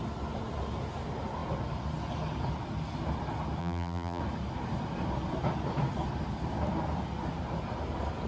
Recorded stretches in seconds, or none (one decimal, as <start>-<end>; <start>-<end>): 0.0-3.6; 4.2-8.3